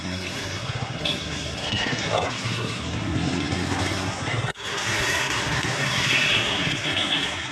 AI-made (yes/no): yes